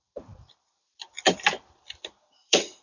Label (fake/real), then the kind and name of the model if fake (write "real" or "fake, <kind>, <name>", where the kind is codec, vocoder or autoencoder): fake, vocoder, BigVGAN v2